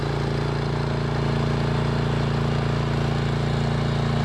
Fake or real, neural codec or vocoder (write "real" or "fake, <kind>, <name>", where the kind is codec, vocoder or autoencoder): real